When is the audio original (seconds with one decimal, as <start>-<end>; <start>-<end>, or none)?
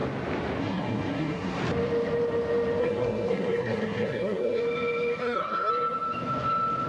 0.0-0.6; 1.6-2.8; 4.6-5.2; 5.7-6.9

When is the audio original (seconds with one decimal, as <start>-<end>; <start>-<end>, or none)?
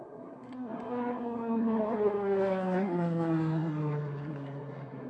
none